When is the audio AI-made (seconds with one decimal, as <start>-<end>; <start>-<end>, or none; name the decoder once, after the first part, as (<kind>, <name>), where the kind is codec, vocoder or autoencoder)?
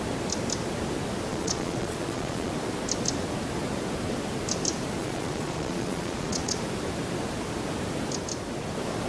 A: 1.3-2.5 (vocoder, Vocos); 5.0-6.6